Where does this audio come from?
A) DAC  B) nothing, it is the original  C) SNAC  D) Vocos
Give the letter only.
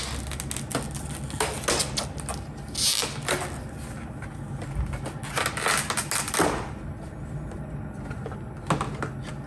B